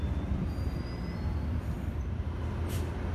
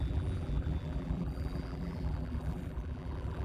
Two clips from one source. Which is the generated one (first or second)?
second